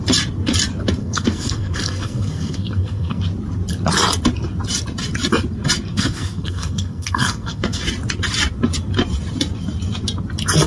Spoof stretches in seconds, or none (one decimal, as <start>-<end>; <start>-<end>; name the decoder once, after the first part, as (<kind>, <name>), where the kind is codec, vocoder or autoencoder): 1.0-3.2 (codec, SNAC); 5.9-7.8

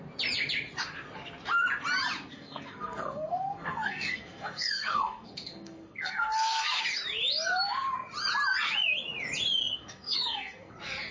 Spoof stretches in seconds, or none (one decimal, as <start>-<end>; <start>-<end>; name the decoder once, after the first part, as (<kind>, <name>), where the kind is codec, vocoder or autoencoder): 2.3-6.8 (codec, SNAC); 9.6-10.7

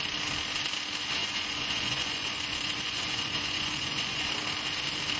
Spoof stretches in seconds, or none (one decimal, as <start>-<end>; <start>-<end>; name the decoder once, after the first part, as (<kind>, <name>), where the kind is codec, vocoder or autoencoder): 1.2-4.3 (vocoder, Vocos)

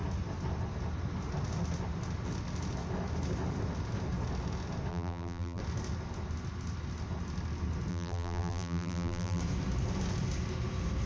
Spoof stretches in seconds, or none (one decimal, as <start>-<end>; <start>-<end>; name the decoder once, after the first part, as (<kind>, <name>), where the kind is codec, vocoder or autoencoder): 4.9-5.6 (vocoder, BigVGAN v2); 7.9-9.4

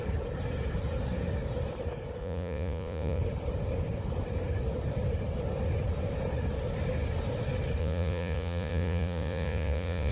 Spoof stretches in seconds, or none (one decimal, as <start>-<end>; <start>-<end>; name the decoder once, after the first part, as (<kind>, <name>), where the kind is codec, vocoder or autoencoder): 2.2-3.2 (vocoder, Vocos); 7.8-10.1

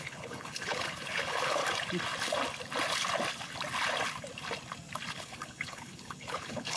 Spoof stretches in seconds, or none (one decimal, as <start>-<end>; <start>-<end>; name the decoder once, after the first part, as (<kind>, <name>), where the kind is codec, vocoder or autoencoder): 0.0-1.6 (codec, HILCodec); 5.1-6.8

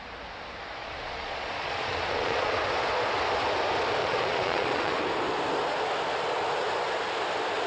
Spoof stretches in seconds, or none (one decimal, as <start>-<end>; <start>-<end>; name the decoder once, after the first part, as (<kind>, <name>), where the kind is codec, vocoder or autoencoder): 0.8-2.5 (vocoder, Vocos); 4.0-5.0

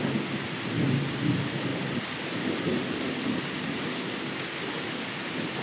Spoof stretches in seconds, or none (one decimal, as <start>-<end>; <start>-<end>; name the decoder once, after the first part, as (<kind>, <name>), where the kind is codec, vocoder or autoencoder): none